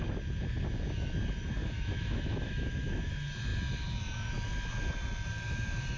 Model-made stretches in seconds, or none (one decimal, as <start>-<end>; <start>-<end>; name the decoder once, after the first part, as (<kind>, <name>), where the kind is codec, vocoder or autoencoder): 1.6-3.1 (autoencoder, DAC-VAE)